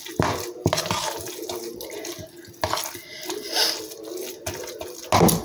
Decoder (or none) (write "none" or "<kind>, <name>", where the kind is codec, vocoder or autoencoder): none